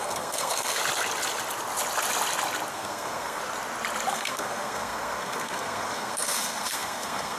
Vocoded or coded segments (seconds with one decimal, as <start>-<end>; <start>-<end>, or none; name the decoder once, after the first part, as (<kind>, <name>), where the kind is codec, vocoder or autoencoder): 0.0-0.8 (codec, SNAC); 2.7-3.4; 4.1-7.4